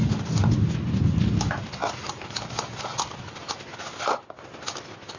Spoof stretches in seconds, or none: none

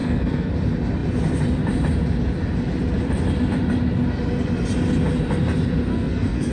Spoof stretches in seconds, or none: 0.0-0.5 (codec, SNAC); 5.9-6.5

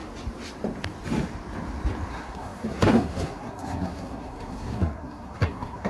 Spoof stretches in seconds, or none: 2.1-5.9 (codec, SNAC)

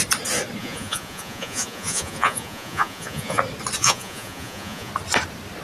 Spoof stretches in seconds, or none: 0.6-3.4 (vocoder, Vocos); 3.8-4.9

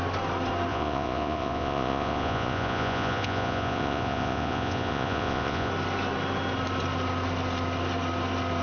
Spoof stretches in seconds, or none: 0.7-5.7 (vocoder, Vocos)

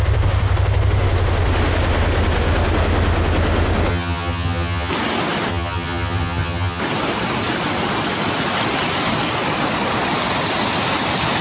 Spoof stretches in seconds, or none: 3.9-4.9 (vocoder, HiFi-GAN); 5.5-6.8